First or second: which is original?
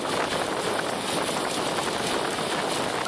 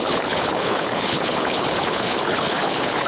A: first